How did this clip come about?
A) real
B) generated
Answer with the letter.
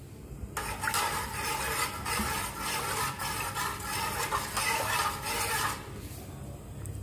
A